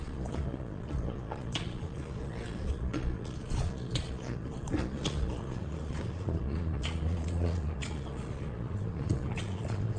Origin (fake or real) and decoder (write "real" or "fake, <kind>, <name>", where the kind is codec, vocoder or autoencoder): fake, vocoder, Vocos